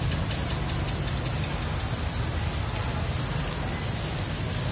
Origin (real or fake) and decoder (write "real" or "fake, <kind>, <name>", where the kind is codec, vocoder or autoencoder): real